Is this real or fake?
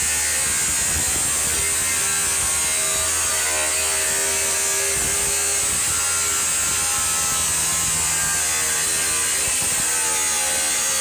real